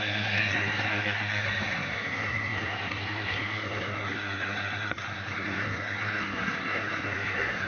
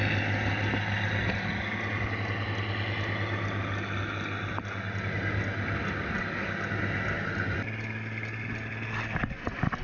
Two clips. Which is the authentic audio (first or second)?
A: second